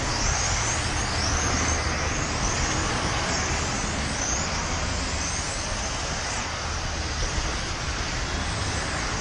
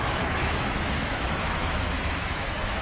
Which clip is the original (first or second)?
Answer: first